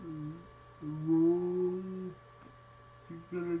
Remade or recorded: recorded